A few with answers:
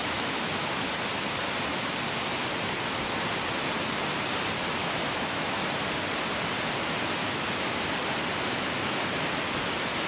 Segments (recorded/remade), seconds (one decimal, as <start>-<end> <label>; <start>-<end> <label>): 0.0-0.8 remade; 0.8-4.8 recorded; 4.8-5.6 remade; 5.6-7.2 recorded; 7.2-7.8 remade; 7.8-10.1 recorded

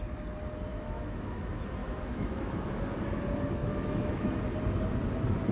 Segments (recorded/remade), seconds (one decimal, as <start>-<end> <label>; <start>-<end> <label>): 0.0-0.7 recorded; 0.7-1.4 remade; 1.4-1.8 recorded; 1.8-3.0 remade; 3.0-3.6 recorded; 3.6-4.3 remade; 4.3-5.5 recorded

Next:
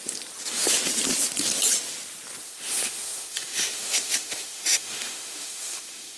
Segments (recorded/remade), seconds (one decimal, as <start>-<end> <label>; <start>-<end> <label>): 0.0-2.4 recorded; 2.4-6.2 remade

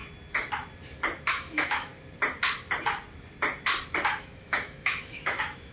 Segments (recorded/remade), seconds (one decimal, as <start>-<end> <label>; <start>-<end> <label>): 0.0-1.3 recorded; 1.3-1.9 remade; 1.9-4.2 recorded; 4.2-5.7 remade

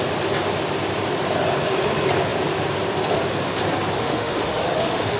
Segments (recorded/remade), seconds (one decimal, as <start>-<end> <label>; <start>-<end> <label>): 0.0-4.0 recorded; 4.0-5.2 remade

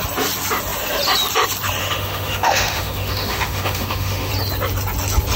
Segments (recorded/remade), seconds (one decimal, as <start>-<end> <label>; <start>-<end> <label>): 0.0-1.8 recorded; 1.8-4.3 remade; 4.3-5.4 recorded

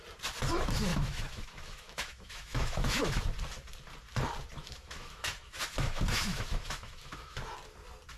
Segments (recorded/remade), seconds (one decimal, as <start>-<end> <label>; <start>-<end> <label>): 0.0-0.9 recorded; 0.9-3.2 remade; 3.2-4.6 recorded; 4.6-7.4 remade; 7.4-8.2 recorded

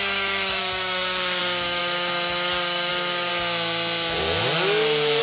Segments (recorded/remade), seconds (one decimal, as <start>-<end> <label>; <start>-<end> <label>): 0.0-3.3 remade; 3.3-5.2 recorded